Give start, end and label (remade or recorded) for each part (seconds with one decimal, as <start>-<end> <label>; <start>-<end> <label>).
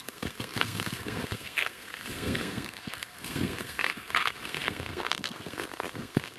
0.0-6.4 remade